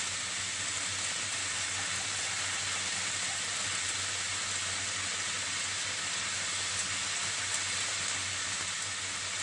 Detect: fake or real real